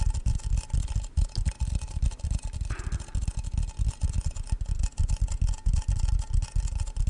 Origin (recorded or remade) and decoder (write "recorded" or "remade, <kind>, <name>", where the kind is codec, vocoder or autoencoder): recorded